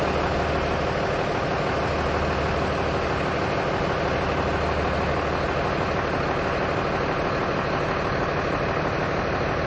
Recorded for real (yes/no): yes